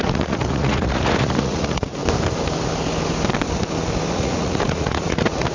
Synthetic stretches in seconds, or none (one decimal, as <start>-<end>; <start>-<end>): 0.0-2.0; 4.1-5.5